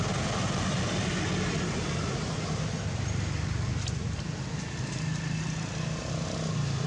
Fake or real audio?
real